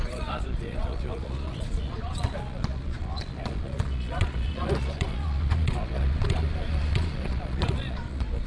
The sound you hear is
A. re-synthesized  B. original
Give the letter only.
A